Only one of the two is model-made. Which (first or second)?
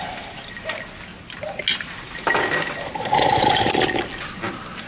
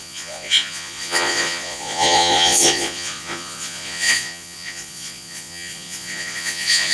second